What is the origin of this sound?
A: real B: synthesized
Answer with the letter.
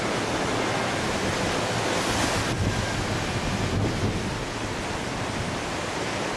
A